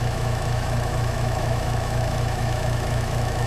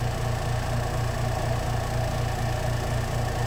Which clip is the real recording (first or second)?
second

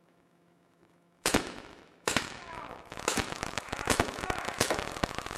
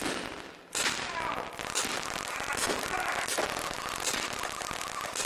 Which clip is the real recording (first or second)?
second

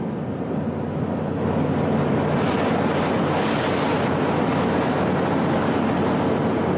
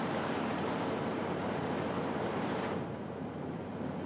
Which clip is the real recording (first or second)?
first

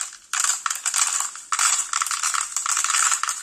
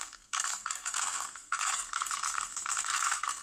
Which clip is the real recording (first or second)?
first